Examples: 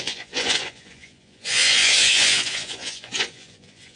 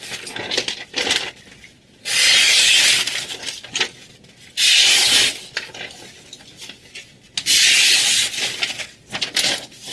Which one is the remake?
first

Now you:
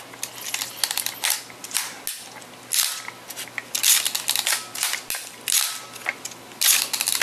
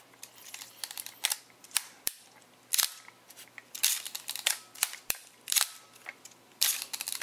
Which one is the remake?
second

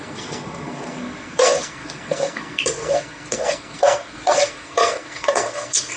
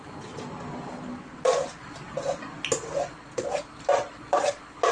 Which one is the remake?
first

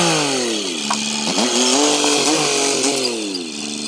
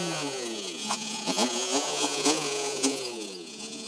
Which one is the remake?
second